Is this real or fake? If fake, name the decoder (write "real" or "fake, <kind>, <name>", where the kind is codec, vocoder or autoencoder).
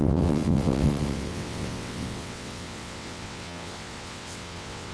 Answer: fake, vocoder, WaveNeXt